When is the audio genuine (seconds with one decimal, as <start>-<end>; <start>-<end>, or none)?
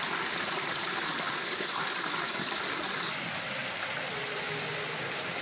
0.0-5.4